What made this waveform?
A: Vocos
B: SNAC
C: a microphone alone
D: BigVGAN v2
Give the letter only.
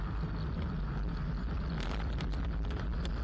C